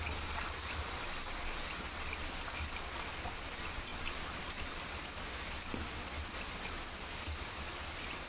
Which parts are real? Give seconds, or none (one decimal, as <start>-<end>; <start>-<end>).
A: 0.0-8.3